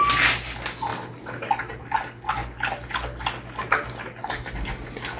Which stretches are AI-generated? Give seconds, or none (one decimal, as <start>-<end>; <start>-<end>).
none